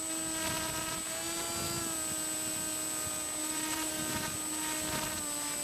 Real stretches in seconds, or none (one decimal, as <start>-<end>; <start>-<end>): 0.0-3.4; 4.0-5.6